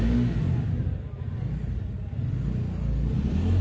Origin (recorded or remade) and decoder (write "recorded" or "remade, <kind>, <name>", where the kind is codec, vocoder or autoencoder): recorded